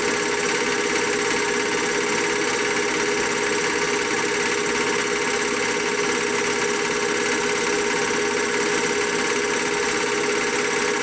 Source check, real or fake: real